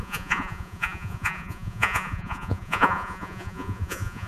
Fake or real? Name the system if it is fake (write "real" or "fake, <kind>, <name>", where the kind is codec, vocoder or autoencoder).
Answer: fake, vocoder, Vocos